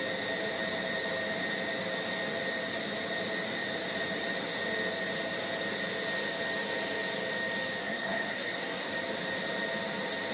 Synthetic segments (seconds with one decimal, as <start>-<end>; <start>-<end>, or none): 7.8-8.9

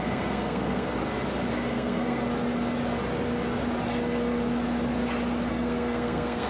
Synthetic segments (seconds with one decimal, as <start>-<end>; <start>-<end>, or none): 0.0-1.0; 1.5-2.2; 5.5-6.5

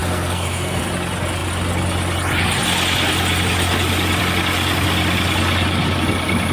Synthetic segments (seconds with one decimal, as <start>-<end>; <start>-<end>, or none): 0.0-0.8

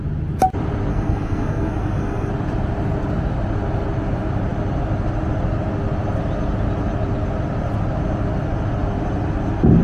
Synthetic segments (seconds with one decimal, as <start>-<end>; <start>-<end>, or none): 0.9-2.3

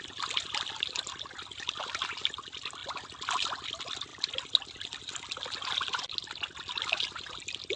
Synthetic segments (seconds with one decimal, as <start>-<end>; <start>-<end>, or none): none